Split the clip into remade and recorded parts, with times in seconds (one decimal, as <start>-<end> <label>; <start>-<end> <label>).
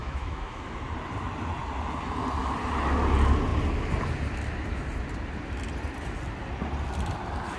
0.0-0.8 remade; 0.8-7.6 recorded